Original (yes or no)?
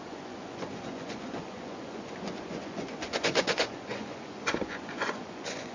no